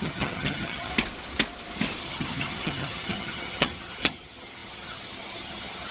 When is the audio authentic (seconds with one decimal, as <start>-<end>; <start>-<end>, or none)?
0.9-2.0